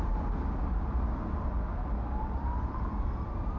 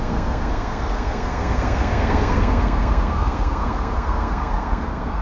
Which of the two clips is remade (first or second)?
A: second